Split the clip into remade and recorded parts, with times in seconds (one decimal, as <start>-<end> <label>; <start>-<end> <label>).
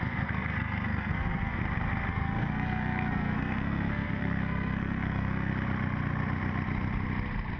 0.0-1.6 remade; 1.6-2.1 recorded; 2.1-5.5 remade; 5.5-7.6 recorded